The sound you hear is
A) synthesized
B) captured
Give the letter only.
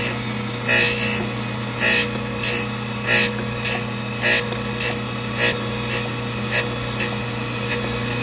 B